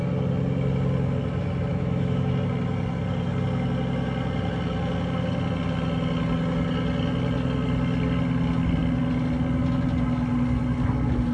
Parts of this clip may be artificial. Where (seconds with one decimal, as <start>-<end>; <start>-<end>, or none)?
1.7-2.3